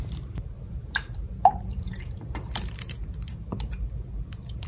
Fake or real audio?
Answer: fake